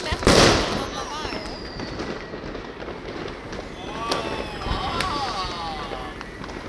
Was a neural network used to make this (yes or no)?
no